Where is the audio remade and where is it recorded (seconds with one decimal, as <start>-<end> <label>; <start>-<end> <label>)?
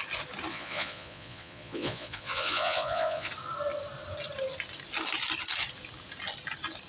0.0-0.5 recorded; 0.5-3.3 remade; 3.3-6.9 recorded